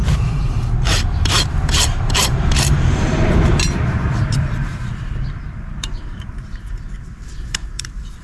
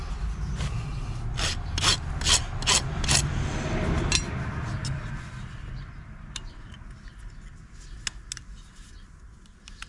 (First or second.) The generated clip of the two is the first